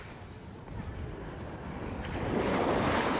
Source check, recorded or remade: recorded